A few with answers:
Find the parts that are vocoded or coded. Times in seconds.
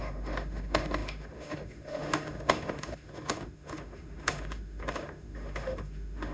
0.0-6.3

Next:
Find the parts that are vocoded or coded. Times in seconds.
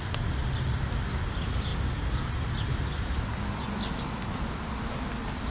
none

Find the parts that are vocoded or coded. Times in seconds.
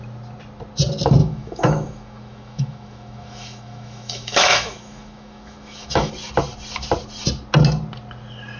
1.2-6.1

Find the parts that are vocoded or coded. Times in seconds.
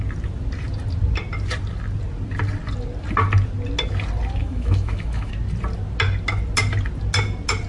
4.4-5.3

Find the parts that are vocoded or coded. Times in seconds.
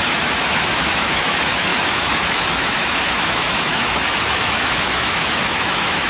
0.0-6.1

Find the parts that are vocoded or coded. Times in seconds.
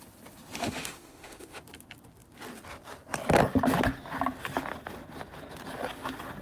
0.6-1.6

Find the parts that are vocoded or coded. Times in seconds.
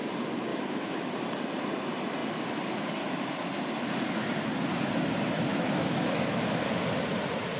0.5-1.1; 5.5-6.6